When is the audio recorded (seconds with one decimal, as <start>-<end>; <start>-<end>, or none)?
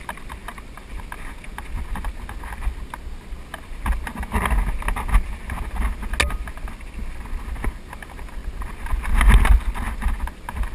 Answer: 0.0-10.7